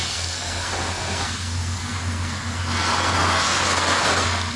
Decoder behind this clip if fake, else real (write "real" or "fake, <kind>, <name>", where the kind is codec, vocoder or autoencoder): fake, codec, SNAC